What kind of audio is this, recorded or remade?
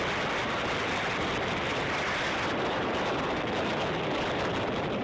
recorded